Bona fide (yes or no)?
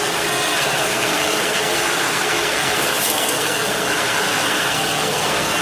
no